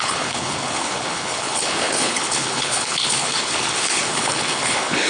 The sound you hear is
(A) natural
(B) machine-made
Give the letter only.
B